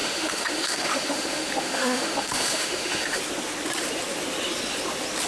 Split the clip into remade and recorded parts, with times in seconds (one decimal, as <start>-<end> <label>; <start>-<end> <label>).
0.0-3.2 remade; 3.2-5.3 recorded